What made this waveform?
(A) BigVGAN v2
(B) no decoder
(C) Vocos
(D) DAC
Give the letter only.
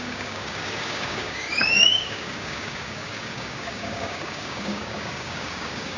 D